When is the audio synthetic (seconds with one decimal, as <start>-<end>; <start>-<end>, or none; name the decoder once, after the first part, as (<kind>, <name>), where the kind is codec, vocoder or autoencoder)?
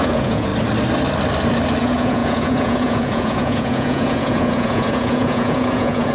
0.0-0.5 (vocoder, Vocos); 1.8-6.1